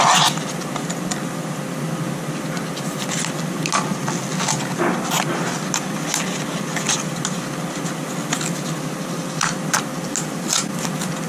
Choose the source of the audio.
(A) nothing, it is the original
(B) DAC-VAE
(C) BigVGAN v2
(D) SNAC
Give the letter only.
A